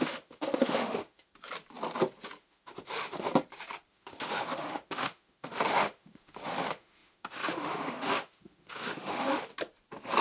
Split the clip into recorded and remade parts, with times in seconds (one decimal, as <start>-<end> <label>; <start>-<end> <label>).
0.0-1.3 remade; 1.3-2.4 recorded; 2.4-3.3 remade; 3.3-3.9 recorded; 3.9-9.5 remade; 9.5-10.2 recorded